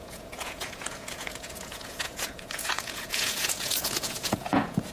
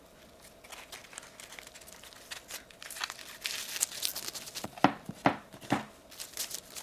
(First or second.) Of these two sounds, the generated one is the first